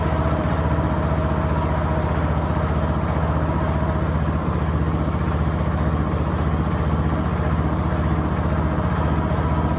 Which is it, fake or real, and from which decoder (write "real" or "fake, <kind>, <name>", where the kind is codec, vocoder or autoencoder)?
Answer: real